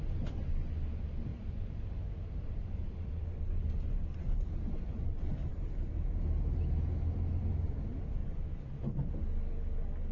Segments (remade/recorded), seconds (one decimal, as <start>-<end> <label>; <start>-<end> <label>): 0.0-1.3 recorded; 1.3-3.6 remade; 3.6-5.5 recorded; 5.5-6.2 remade; 6.2-8.2 recorded; 8.2-9.2 remade; 9.2-10.1 recorded

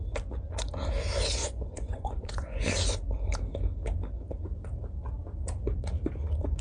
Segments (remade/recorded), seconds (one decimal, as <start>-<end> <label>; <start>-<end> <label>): 0.0-1.4 recorded; 1.4-2.6 remade; 2.6-6.6 recorded